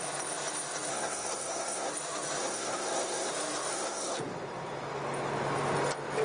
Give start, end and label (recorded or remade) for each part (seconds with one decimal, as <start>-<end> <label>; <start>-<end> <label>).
0.0-0.9 recorded; 0.9-1.9 remade; 1.9-2.4 recorded; 2.4-3.3 remade; 3.3-3.7 recorded; 3.7-4.2 remade; 4.2-6.2 recorded